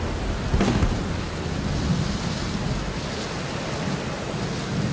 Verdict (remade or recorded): recorded